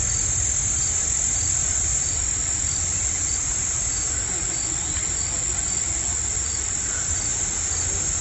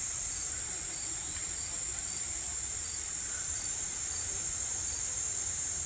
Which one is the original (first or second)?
first